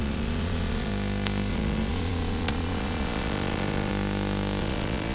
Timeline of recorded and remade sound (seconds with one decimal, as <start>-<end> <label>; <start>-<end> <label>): 0.0-0.9 remade; 0.9-1.5 recorded; 1.5-3.9 remade; 3.9-4.6 recorded; 4.6-5.1 remade